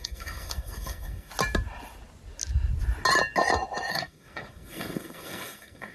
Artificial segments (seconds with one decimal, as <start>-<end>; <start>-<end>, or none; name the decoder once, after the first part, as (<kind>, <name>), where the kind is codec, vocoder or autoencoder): 0.0-1.3 (codec, SNAC); 3.9-5.9